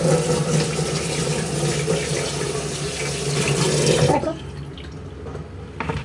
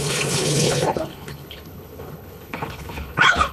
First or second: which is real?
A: first